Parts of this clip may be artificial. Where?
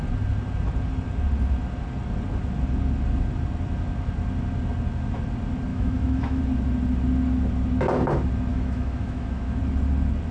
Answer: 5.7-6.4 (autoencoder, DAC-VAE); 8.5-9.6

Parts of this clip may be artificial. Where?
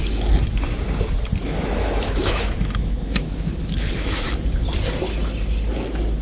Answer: 1.4-4.3 (autoencoder, DAC-VAE)